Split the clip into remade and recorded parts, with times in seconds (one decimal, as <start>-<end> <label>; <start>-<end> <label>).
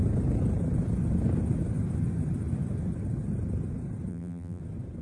0.0-4.1 recorded; 4.1-4.6 remade; 4.6-5.0 recorded